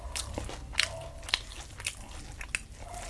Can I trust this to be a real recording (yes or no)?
yes